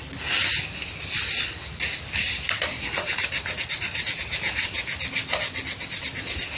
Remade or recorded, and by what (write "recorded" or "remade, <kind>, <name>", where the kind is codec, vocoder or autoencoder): recorded